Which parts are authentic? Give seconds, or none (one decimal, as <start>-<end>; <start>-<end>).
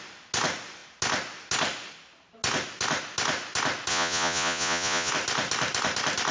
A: 0.0-3.9; 5.1-6.3